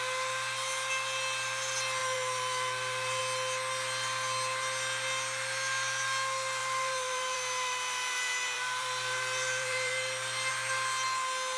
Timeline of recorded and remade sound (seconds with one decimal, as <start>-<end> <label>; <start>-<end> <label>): 0.0-2.0 recorded; 2.0-3.2 remade; 3.2-6.6 recorded; 6.6-10.5 remade; 10.5-11.6 recorded